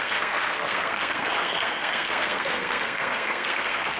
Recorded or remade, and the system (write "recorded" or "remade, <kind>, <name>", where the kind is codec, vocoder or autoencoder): remade, codec, SNAC